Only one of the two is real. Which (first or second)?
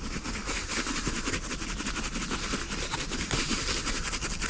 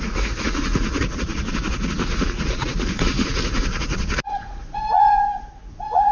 first